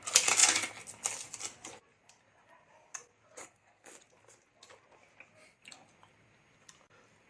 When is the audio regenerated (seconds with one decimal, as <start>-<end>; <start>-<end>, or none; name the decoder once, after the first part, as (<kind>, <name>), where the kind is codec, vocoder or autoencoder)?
3.4-3.9 (codec, SNAC)